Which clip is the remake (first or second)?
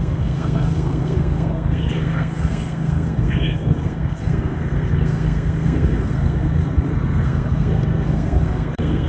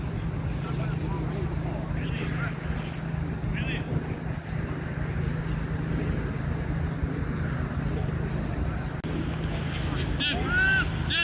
first